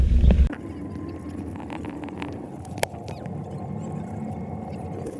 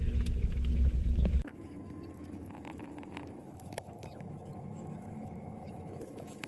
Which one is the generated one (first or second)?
second